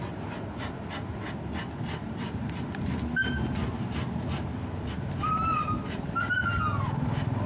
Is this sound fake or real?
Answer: real